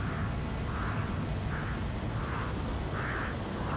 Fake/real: real